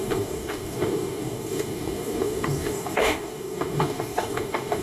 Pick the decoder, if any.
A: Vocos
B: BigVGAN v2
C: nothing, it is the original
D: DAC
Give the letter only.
D